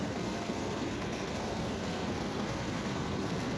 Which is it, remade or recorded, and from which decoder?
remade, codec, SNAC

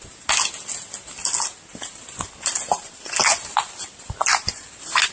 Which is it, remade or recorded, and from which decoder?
recorded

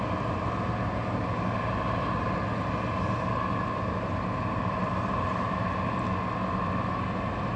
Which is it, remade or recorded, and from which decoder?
recorded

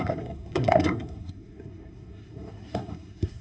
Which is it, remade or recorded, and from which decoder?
remade, codec, SNAC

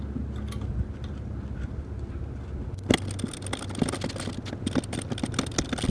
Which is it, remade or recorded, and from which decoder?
recorded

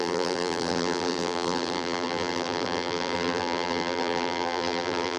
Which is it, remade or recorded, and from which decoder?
remade, vocoder, BigVGAN v2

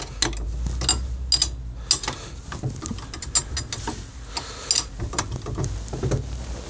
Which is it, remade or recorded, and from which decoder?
recorded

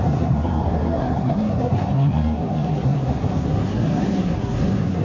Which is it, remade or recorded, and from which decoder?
remade, codec, SNAC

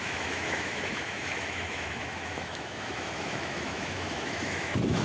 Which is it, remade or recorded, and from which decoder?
remade, autoencoder, DAC-VAE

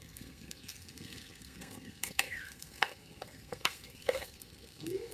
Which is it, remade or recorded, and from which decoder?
remade, codec, SNAC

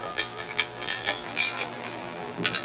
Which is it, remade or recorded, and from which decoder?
remade, vocoder, BigVGAN v2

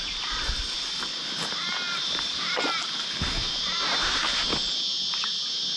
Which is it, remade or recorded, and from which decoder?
recorded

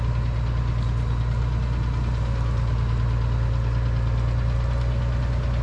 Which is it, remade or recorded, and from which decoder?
recorded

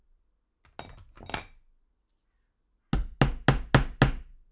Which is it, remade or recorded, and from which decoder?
recorded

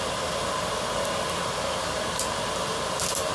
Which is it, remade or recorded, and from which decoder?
recorded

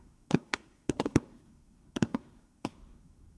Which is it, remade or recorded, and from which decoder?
remade, codec, SNAC